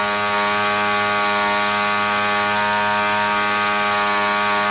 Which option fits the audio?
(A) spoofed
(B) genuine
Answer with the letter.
B